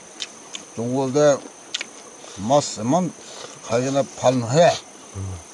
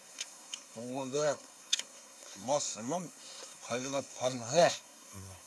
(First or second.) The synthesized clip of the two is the second